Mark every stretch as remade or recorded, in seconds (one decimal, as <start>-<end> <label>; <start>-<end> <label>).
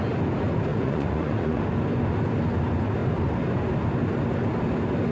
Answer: 0.0-0.7 recorded; 0.7-1.6 remade; 1.6-5.1 recorded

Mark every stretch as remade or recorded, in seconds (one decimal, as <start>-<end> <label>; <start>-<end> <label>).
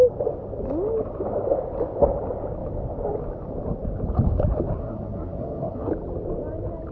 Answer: 0.0-4.8 recorded; 4.8-5.9 remade; 5.9-6.9 recorded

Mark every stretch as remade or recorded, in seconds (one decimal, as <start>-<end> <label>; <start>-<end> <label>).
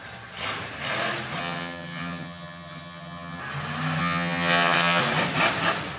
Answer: 0.0-1.4 recorded; 1.4-3.4 remade; 3.4-4.0 recorded; 4.0-5.0 remade; 5.0-6.0 recorded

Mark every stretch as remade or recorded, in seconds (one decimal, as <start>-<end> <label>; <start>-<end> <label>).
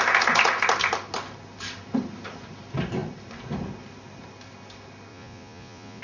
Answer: 0.0-5.1 recorded; 5.1-6.0 remade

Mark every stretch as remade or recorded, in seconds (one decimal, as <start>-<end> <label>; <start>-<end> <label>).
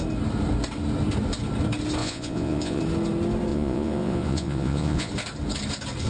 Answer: 0.0-2.0 recorded; 2.0-2.8 remade; 2.8-3.5 recorded; 3.5-5.1 remade; 5.1-6.1 recorded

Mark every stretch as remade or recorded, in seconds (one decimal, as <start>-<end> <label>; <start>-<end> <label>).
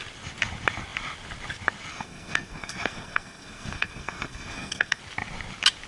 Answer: 0.0-1.9 recorded; 1.9-5.0 remade; 5.0-5.9 recorded